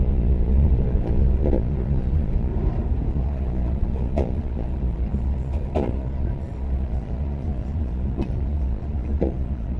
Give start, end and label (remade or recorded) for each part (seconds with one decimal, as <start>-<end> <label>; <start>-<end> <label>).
0.0-2.5 remade; 2.5-3.1 recorded; 3.1-9.8 remade